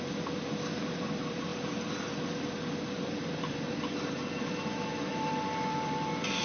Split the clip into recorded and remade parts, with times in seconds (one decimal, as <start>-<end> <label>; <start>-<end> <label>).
0.0-6.4 remade